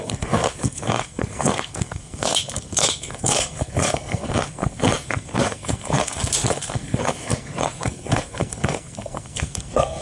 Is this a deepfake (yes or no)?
yes